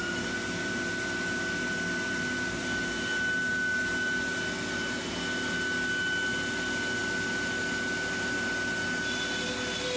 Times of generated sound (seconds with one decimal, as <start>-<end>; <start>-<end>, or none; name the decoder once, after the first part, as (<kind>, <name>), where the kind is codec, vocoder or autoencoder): none